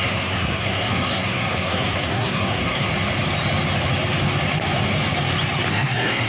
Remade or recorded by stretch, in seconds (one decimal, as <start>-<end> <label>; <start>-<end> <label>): 0.0-2.9 remade; 2.9-5.7 recorded; 5.7-6.3 remade